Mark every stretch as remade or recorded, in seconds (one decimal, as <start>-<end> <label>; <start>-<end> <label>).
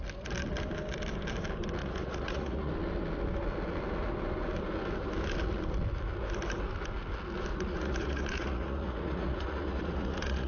0.0-1.8 recorded; 1.8-2.7 remade; 2.7-7.5 recorded; 7.5-10.5 remade